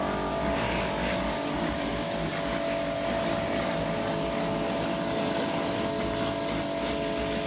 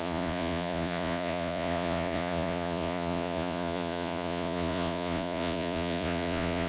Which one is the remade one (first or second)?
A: second